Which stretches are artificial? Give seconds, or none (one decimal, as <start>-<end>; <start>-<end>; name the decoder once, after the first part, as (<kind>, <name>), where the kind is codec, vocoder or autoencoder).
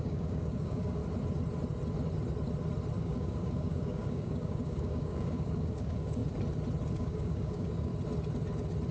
0.0-1.0 (codec, DAC); 3.0-6.2; 6.9-7.9